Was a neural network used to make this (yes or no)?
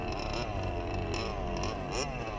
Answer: no